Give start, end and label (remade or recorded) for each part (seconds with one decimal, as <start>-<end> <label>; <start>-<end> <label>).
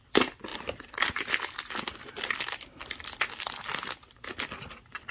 0.0-0.5 recorded; 0.5-1.3 remade; 1.3-5.1 recorded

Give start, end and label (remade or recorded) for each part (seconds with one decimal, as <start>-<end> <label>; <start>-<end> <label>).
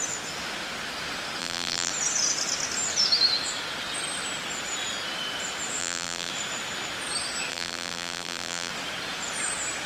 0.0-1.4 recorded; 1.4-1.9 remade; 1.9-5.8 recorded; 5.8-6.3 remade; 6.3-7.5 recorded; 7.5-8.7 remade; 8.7-9.9 recorded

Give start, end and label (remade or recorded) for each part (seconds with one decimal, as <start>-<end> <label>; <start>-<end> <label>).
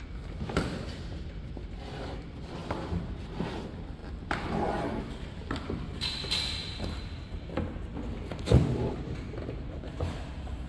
0.0-8.5 recorded; 8.5-10.7 remade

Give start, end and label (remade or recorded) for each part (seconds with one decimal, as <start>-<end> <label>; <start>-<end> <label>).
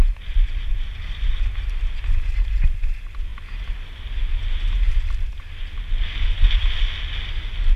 0.0-7.8 recorded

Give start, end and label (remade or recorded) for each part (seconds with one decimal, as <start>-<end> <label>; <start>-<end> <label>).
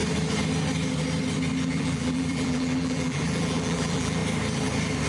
0.0-1.6 recorded; 1.6-4.2 remade; 4.2-5.1 recorded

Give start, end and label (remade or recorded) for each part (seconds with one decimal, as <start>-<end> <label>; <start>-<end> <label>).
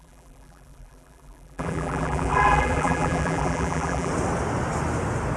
0.0-4.1 remade; 4.1-5.4 recorded